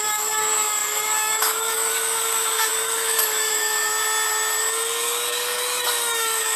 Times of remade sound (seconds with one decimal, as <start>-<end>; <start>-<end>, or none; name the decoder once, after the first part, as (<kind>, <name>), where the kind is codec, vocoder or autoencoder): 0.0-3.9 (codec, DAC); 4.6-6.6